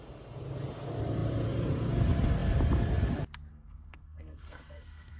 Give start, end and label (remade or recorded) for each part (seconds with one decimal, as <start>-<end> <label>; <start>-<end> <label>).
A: 0.0-3.5 recorded; 3.5-5.2 remade